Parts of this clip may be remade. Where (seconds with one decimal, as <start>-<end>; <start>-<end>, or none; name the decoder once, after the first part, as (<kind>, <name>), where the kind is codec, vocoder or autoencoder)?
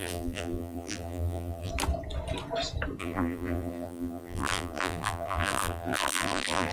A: 0.0-1.7 (vocoder, BigVGAN v2); 3.0-6.7